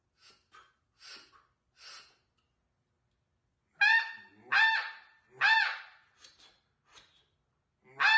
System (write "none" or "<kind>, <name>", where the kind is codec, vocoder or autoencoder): none